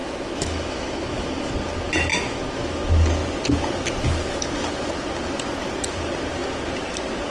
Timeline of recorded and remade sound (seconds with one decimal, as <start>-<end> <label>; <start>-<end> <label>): 0.0-1.5 remade; 1.5-2.1 recorded; 2.1-2.8 remade; 2.8-7.3 recorded